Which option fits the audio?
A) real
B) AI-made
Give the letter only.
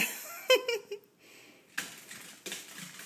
A